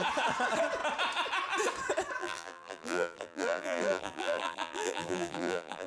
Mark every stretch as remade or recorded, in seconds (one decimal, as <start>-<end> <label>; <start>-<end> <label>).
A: 0.0-2.2 recorded; 2.2-5.9 remade